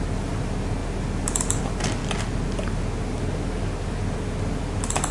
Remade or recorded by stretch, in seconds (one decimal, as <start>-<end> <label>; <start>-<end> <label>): 0.0-5.1 recorded